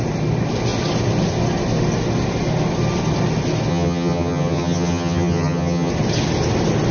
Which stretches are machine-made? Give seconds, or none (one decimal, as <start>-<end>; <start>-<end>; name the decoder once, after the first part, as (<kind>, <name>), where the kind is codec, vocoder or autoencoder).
3.7-5.9 (vocoder, HiFi-GAN)